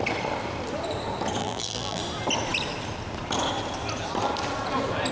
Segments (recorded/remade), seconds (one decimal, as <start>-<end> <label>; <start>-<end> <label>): 0.0-1.4 recorded; 1.4-2.0 remade; 2.0-5.1 recorded